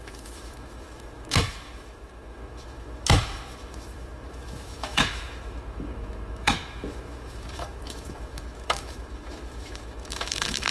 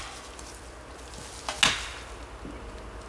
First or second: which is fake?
first